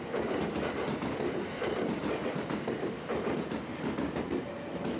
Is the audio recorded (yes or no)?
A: yes